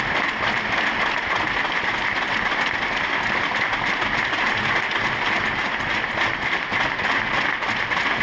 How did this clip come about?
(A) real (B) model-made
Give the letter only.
A